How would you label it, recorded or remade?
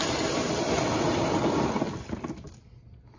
recorded